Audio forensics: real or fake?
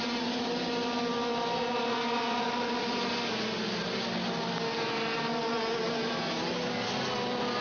real